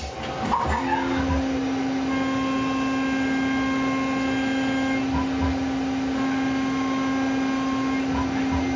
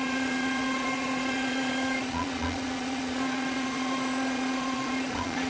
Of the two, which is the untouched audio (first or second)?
first